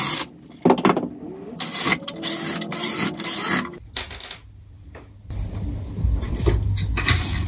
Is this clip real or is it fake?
real